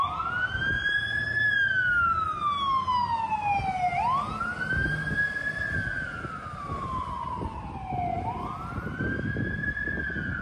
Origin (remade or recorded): recorded